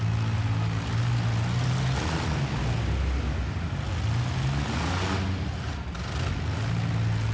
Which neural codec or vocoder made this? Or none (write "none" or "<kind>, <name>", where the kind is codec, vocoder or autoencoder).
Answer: none